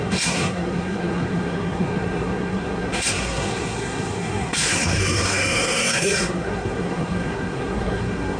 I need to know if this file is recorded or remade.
remade